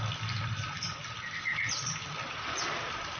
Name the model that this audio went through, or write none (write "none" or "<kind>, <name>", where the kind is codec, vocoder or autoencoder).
none